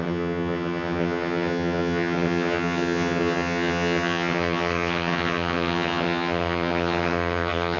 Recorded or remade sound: remade